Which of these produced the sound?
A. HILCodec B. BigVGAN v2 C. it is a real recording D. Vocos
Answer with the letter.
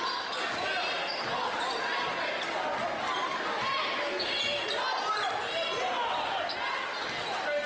C